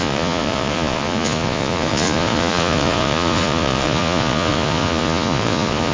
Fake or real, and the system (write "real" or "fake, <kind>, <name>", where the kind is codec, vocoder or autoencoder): fake, vocoder, Vocos